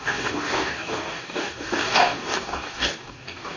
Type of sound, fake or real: fake